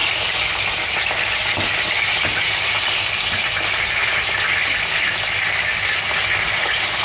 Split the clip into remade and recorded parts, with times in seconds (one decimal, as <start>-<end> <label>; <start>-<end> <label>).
0.0-7.0 recorded